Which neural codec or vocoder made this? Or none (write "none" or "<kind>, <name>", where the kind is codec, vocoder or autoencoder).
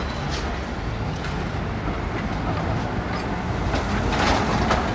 none